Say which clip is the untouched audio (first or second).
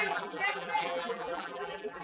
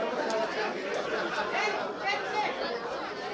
second